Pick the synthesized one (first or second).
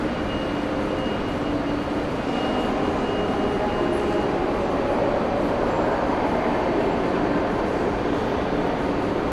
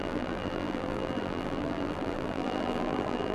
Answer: second